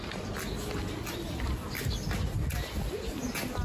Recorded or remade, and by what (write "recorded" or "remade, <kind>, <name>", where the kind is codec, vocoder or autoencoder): recorded